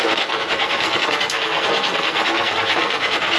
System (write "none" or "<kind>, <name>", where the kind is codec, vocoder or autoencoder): codec, SNAC